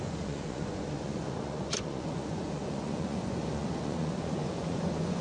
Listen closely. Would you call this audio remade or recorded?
remade